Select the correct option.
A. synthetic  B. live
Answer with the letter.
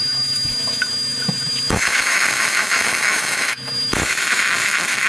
A